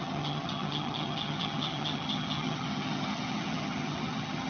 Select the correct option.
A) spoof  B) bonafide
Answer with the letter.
A